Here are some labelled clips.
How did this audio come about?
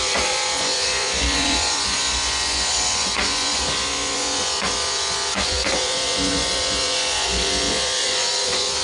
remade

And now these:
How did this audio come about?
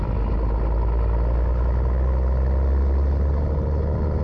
recorded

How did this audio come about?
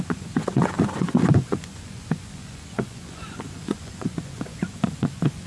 remade